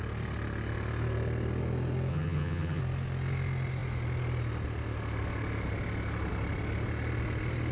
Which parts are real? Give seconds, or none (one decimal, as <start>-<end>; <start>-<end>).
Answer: 0.0-2.1; 2.8-7.7